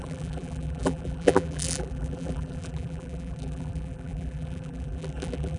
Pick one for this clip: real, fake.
fake